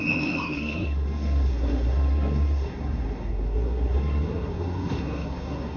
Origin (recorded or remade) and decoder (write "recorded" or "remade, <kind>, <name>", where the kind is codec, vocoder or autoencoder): remade, codec, SNAC